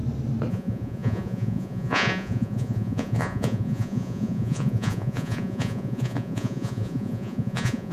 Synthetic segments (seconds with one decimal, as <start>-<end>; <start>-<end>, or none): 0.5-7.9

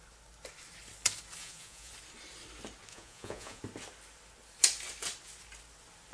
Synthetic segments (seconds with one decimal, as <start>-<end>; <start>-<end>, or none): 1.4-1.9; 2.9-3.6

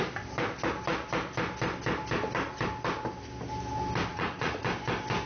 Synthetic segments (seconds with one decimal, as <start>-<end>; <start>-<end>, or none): 4.1-4.6